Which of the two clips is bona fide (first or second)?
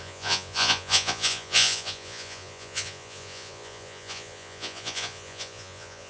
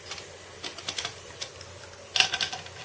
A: second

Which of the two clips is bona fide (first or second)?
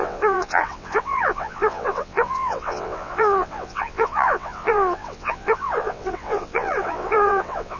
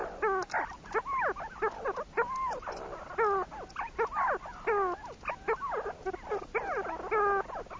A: second